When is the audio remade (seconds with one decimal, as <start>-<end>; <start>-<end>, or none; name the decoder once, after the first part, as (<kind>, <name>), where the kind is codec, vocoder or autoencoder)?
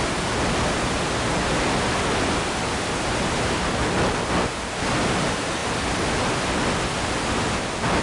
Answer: 5.6-6.3 (vocoder, BigVGAN v2)